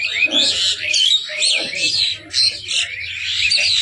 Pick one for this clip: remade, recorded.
recorded